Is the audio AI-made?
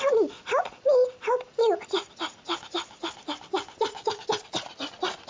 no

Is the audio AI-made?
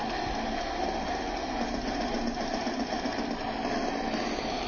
no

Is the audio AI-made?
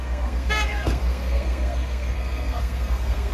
yes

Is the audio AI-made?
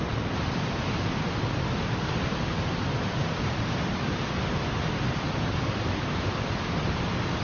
yes